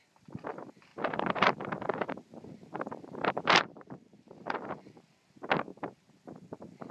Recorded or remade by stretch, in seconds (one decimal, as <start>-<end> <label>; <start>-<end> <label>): 0.0-0.9 recorded; 0.9-5.0 remade; 5.0-5.7 recorded; 5.7-6.2 remade; 6.2-6.9 recorded